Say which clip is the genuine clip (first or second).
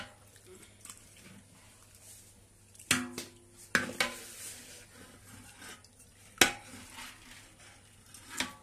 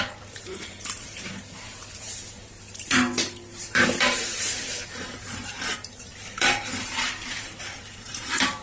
first